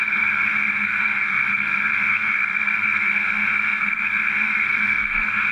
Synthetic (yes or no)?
yes